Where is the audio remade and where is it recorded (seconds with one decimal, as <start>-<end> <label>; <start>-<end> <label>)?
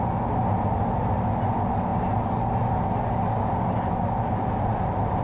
0.0-5.2 recorded